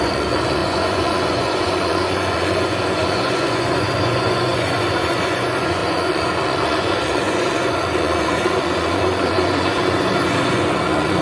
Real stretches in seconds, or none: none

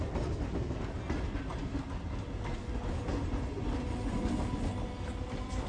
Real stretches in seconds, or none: 0.0-5.7

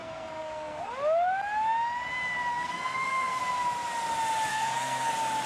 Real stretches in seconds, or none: 0.9-2.5; 3.4-4.5; 5.1-5.5